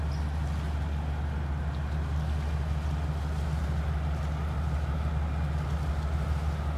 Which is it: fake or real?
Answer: real